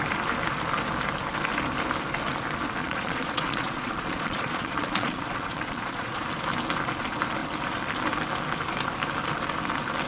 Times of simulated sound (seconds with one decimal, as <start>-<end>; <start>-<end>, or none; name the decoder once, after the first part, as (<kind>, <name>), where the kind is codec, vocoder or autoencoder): 2.8-6.2 (vocoder, Vocos)

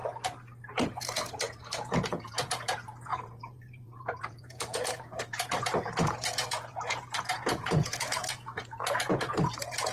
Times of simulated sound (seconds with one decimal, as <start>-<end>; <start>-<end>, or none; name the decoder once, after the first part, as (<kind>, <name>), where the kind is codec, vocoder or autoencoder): 0.7-9.9 (vocoder, Vocos)

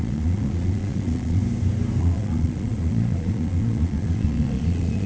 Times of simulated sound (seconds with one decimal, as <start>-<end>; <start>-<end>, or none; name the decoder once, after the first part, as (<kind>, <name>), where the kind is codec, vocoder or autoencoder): 0.0-1.4 (vocoder, Vocos); 2.0-5.1

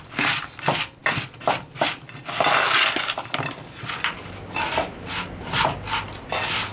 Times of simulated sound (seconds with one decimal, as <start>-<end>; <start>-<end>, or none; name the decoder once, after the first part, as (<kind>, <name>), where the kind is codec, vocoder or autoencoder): none

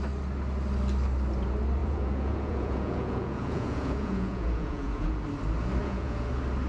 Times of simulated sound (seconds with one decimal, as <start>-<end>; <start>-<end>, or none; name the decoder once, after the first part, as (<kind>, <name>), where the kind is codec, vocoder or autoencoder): 1.8-5.2 (vocoder, Vocos); 5.8-6.3